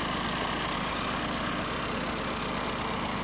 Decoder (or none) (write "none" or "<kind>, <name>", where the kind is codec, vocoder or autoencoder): none